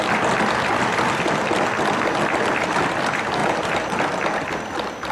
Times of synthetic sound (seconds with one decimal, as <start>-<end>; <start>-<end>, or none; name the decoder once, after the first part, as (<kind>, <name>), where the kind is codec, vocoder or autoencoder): 3.4-4.0 (vocoder, BigVGAN v2)